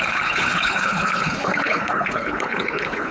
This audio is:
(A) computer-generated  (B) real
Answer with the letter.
A